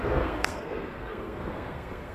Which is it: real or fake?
fake